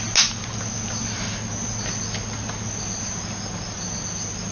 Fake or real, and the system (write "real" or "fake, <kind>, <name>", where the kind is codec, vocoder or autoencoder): real